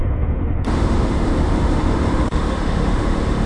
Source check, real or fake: fake